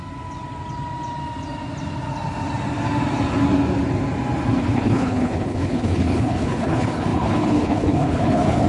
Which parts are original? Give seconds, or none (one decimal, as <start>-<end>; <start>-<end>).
0.0-4.6